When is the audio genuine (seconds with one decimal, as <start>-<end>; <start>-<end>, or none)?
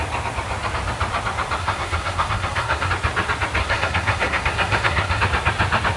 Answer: 0.0-1.6; 2.9-3.6; 5.2-6.0